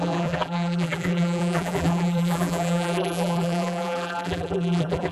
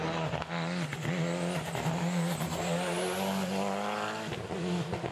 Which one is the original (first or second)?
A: second